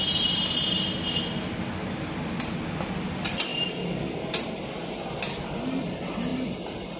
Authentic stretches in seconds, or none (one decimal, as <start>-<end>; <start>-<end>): 0.0-3.5; 5.2-6.3